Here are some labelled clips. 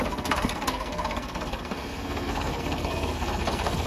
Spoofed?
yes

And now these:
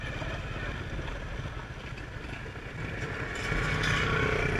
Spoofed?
no